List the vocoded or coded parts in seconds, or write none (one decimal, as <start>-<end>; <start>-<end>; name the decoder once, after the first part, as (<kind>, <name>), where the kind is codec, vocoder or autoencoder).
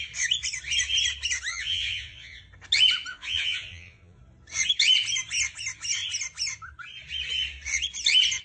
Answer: 1.5-2.4 (vocoder, Vocos); 3.1-4.2